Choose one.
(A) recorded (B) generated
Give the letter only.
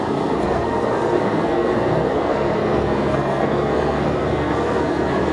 B